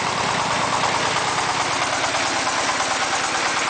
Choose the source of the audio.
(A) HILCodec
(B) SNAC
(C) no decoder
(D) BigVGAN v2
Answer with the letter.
C